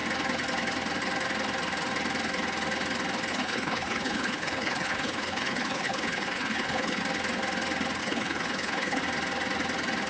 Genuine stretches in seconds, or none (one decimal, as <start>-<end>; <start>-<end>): 0.0-3.3; 7.0-8.0; 9.0-10.1